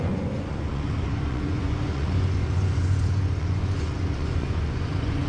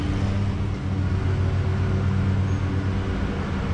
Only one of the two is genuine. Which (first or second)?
second